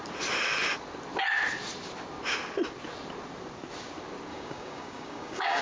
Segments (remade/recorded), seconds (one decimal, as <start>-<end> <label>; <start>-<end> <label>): 0.0-4.3 recorded; 4.3-5.6 remade